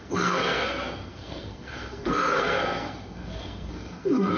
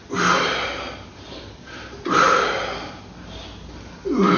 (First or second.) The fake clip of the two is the first